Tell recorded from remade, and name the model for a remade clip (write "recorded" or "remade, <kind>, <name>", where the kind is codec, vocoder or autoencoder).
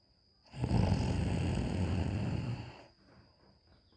remade, vocoder, BigVGAN v2